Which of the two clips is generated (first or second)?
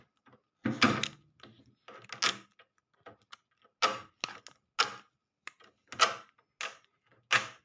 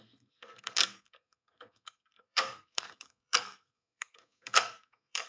second